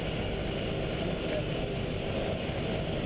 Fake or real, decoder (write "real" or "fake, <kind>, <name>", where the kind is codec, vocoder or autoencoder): real